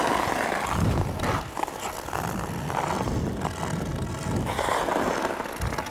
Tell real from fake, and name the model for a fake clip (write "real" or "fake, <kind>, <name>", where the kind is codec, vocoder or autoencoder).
real